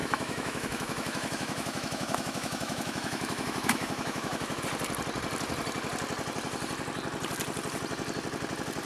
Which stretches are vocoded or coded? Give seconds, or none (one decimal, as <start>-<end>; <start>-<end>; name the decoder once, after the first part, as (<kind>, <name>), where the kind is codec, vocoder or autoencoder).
0.0-4.6 (autoencoder, DAC-VAE)